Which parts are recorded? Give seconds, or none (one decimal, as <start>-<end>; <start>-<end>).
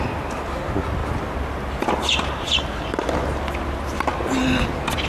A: 0.0-5.1